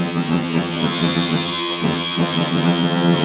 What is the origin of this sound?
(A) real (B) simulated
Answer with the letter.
B